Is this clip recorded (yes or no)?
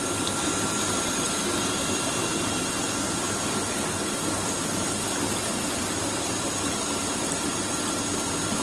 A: yes